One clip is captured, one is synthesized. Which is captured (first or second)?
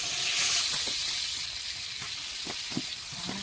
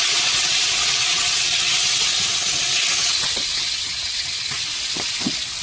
first